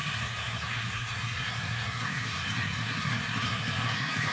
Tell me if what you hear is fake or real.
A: fake